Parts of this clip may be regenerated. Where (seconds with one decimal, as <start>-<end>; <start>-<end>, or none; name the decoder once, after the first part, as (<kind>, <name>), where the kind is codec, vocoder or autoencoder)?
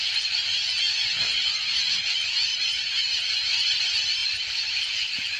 none